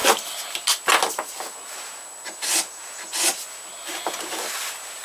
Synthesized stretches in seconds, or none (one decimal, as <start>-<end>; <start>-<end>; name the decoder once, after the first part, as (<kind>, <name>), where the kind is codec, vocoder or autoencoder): none